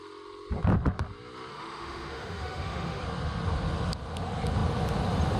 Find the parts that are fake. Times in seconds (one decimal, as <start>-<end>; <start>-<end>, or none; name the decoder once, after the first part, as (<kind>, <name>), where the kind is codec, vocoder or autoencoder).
1.5-3.0 (autoencoder, DAC-VAE)